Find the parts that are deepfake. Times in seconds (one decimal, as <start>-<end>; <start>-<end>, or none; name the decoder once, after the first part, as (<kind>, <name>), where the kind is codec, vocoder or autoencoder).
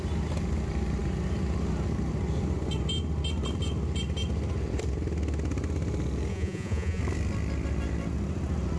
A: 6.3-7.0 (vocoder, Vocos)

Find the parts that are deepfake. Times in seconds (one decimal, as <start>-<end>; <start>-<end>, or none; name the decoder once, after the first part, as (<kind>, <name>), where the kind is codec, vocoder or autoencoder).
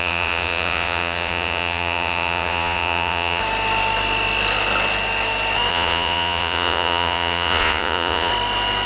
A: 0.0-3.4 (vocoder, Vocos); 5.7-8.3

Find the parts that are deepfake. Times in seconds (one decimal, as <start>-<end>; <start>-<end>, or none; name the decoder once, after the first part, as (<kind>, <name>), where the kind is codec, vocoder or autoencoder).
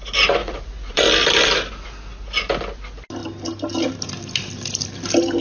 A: 0.4-1.0 (vocoder, Vocos)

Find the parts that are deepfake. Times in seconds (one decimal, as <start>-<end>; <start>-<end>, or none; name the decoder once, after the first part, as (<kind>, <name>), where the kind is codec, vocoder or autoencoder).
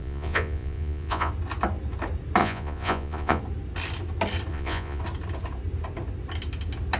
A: 0.0-1.3 (vocoder, Vocos); 2.4-3.4; 4.5-5.0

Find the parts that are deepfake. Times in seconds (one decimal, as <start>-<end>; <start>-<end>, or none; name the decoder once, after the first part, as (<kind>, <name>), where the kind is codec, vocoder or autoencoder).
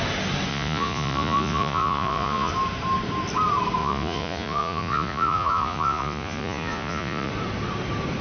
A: 0.5-2.5 (vocoder, Vocos); 3.8-7.3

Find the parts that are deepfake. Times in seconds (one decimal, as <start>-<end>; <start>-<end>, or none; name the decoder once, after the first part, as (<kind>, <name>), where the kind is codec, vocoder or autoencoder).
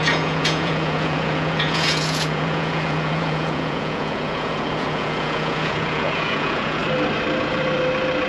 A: 0.0-6.8 (vocoder, Vocos)